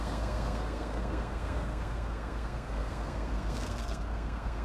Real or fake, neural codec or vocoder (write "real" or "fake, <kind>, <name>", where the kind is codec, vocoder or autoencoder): fake, codec, SNAC